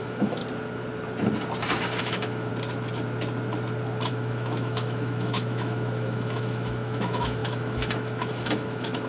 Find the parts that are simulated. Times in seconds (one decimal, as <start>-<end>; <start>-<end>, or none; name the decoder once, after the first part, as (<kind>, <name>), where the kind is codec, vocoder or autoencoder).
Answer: 0.0-0.4 (autoencoder, DAC-VAE); 2.0-2.5; 4.1-9.1